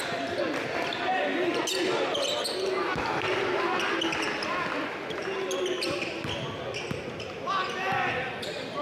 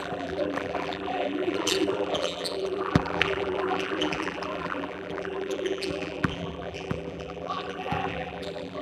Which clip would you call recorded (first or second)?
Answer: first